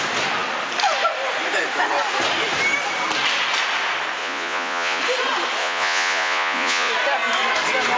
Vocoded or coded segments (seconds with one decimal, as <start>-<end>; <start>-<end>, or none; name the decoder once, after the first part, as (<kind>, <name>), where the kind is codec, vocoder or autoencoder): 4.2-5.0 (vocoder, Vocos); 5.6-6.9

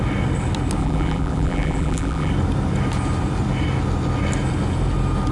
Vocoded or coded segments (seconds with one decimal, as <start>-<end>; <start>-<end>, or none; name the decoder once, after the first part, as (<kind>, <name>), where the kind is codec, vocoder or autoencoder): 0.8-2.3 (vocoder, BigVGAN v2)

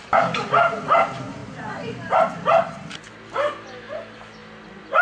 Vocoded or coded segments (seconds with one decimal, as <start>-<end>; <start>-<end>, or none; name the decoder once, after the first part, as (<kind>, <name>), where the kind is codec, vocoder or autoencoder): none